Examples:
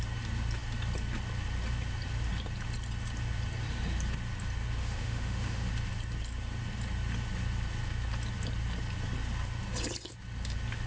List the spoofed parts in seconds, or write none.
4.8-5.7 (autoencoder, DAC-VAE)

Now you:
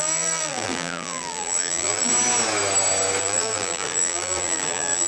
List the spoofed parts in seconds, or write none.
0.0-2.1 (vocoder, BigVGAN v2); 3.2-5.1

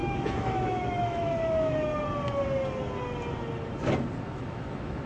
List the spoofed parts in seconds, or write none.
0.0-1.9 (autoencoder, DAC-VAE); 4.2-5.1

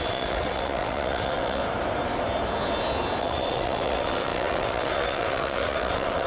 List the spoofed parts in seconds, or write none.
0.0-1.6 (vocoder, WaveNeXt); 3.2-6.3

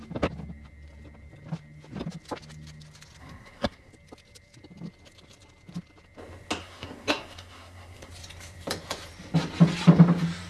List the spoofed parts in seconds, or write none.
3.2-3.9 (codec, SNAC); 6.6-8.1

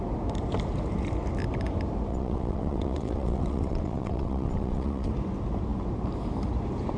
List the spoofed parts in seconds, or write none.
2.1-5.1 (vocoder, WaveNeXt)